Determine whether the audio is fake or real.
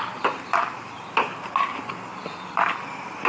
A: real